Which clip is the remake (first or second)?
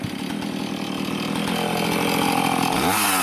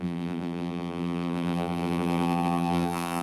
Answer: second